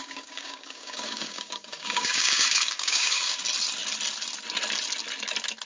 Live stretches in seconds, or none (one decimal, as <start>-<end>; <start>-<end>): 3.4-5.6